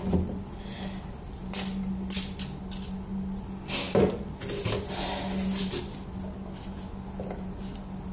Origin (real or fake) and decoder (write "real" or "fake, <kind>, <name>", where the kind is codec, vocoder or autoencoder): real